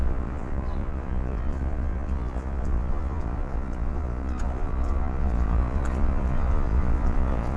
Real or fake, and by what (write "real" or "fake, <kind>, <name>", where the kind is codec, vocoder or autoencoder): fake, vocoder, Vocos